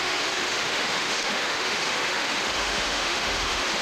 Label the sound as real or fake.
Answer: fake